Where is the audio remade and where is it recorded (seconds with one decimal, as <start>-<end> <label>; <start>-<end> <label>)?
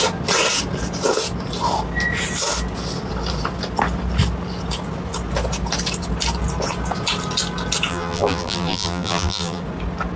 0.0-7.9 recorded; 7.9-9.6 remade; 9.6-10.2 recorded